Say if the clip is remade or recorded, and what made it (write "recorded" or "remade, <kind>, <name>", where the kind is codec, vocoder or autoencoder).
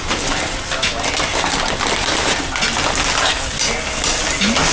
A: recorded